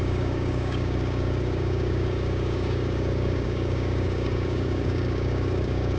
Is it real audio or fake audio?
fake